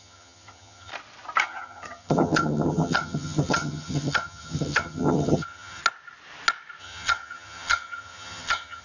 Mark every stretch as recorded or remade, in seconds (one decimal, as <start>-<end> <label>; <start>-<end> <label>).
0.0-0.9 remade; 0.9-1.4 recorded; 1.4-5.8 remade; 5.8-6.8 recorded; 6.8-8.8 remade